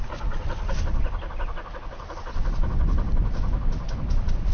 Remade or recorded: recorded